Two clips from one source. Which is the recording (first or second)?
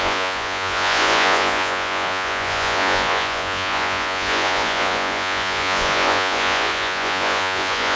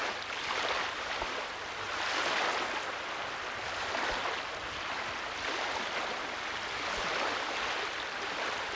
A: second